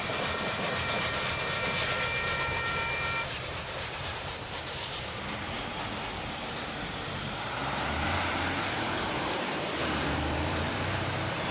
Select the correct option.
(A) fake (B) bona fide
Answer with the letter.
A